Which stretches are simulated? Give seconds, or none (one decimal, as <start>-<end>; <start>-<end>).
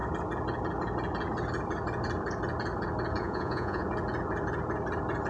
3.2-3.8